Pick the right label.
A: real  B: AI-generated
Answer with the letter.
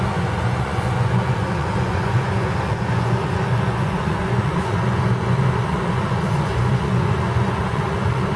B